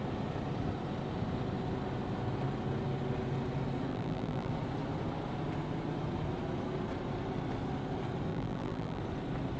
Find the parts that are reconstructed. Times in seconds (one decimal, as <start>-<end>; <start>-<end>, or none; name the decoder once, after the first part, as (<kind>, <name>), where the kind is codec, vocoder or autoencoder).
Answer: 3.9-4.5 (vocoder, BigVGAN v2); 8.3-9.0